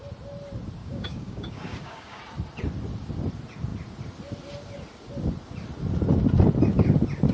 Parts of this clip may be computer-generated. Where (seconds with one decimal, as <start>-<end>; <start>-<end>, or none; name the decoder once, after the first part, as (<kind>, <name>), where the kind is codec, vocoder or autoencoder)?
0.8-2.2 (codec, DAC)